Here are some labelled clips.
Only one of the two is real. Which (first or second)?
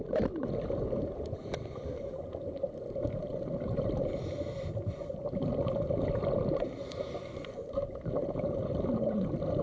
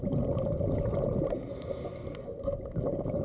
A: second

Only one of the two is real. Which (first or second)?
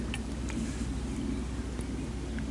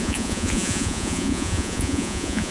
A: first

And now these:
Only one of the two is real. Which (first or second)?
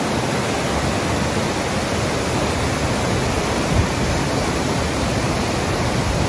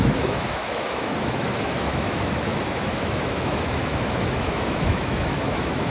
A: first